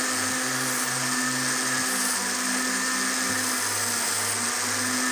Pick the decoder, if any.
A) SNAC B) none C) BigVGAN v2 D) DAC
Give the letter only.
B